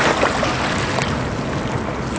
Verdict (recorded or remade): recorded